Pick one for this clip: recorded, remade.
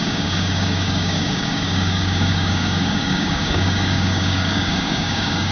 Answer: remade